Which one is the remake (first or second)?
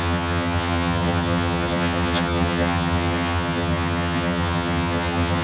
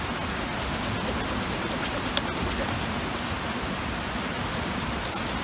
first